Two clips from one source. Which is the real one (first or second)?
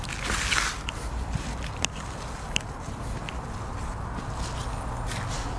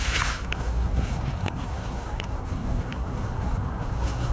first